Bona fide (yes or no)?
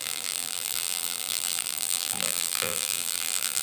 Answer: no